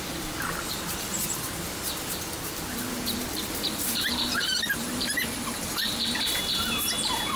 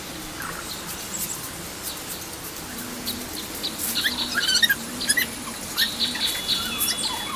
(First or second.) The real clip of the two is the second